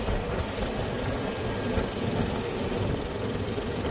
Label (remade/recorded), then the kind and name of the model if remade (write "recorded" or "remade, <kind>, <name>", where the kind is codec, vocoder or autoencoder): recorded